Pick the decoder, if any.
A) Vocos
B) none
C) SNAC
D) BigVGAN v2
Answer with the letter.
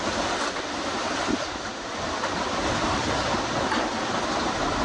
B